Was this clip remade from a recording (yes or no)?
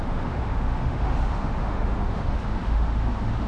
yes